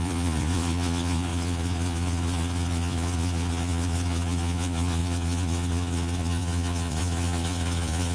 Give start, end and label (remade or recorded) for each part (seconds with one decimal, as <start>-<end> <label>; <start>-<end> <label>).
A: 0.0-8.1 remade